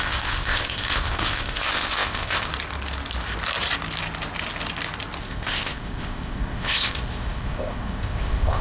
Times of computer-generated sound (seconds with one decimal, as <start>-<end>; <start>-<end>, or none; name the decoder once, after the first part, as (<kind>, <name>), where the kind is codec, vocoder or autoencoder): 0.0-2.5 (codec, ZipCodec); 5.2-8.6